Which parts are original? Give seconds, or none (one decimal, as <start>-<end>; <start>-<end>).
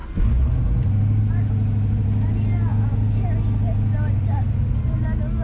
0.0-5.4